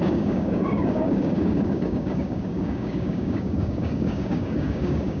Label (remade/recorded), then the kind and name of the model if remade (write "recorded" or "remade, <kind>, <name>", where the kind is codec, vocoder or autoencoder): remade, codec, DAC